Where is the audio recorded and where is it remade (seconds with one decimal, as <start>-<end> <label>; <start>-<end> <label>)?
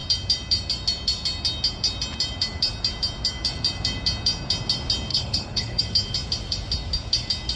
0.0-5.1 recorded; 5.1-5.8 remade; 5.8-7.6 recorded